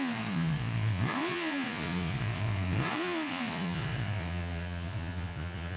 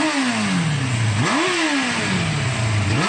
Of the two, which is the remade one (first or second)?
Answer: first